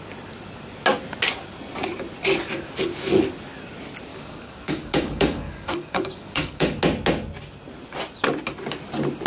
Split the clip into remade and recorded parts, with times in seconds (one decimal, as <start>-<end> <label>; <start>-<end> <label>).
0.0-4.1 recorded; 4.1-6.8 remade; 6.8-9.3 recorded